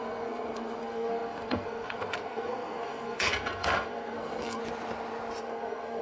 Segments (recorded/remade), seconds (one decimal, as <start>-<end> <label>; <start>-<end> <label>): 0.0-4.6 remade; 4.6-5.4 recorded; 5.4-6.0 remade